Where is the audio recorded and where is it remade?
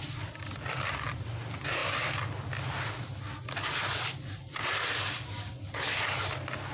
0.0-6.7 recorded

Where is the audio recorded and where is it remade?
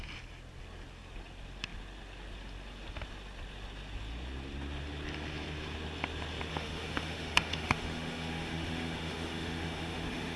0.0-6.5 recorded; 6.5-10.4 remade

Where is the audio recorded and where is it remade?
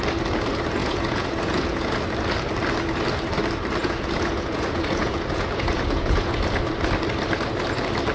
0.0-0.8 recorded; 0.8-2.0 remade; 2.0-3.8 recorded; 3.8-6.3 remade; 6.3-8.1 recorded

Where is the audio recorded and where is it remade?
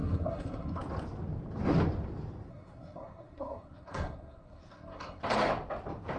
0.0-0.8 remade; 0.8-2.5 recorded; 2.5-5.2 remade; 5.2-6.2 recorded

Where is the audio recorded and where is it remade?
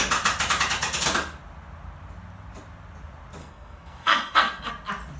0.0-3.4 recorded; 3.4-4.7 remade; 4.7-5.2 recorded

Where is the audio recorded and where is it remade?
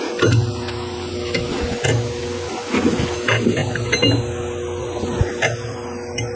0.0-6.4 recorded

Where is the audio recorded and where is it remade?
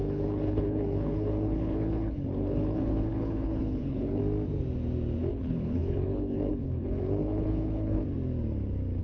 0.0-4.2 remade; 4.2-5.3 recorded; 5.3-8.0 remade; 8.0-9.0 recorded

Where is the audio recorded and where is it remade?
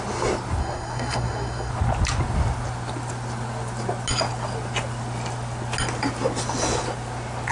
0.0-0.6 recorded; 0.6-1.7 remade; 1.7-7.5 recorded